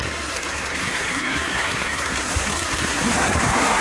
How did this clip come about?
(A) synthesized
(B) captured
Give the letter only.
A